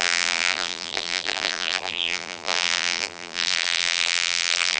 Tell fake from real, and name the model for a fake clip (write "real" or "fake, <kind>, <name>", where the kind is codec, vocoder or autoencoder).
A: fake, vocoder, BigVGAN v2